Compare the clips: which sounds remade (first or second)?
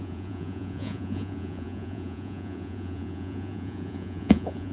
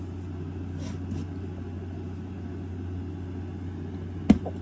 first